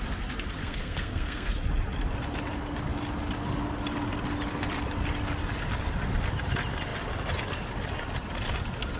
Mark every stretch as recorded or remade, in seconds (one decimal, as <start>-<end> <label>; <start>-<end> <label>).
0.0-0.6 recorded; 0.6-1.5 remade; 1.5-9.0 recorded